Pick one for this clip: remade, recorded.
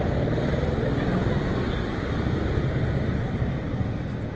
recorded